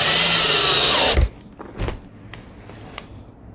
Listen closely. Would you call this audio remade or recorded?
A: recorded